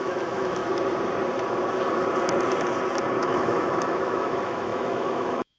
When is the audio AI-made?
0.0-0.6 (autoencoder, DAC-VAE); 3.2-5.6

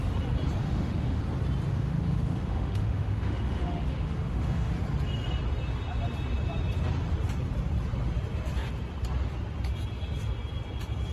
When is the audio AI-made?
0.6-1.2 (autoencoder, DAC-VAE); 1.7-4.7

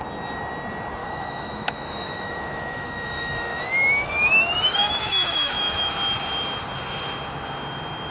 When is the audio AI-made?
1.0-5.9 (autoencoder, DAC-VAE)

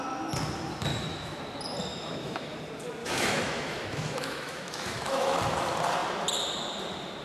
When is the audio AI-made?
0.9-1.4 (autoencoder, DAC-VAE); 1.9-2.6; 3.0-5.4

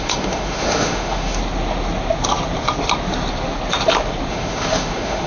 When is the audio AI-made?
0.0-1.4 (autoencoder, DAC-VAE); 4.3-5.3

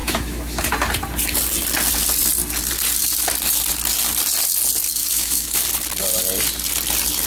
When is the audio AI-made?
0.0-0.7 (autoencoder, DAC-VAE); 5.0-5.6

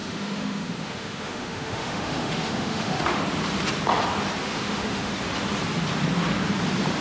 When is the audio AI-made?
0.0-3.2 (autoencoder, DAC-VAE); 4.4-5.1